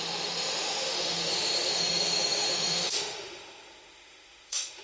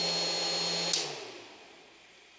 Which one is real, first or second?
second